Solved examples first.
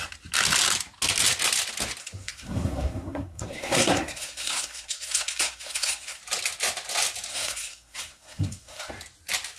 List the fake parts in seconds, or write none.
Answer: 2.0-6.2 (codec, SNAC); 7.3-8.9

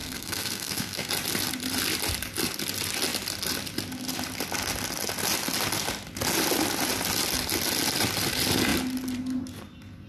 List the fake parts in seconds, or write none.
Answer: 0.0-1.1 (codec, SNAC)